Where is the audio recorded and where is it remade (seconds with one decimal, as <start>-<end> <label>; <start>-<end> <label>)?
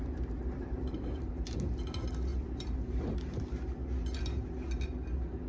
0.0-0.5 recorded; 0.5-1.3 remade; 1.3-2.3 recorded; 2.3-3.7 remade; 3.7-5.5 recorded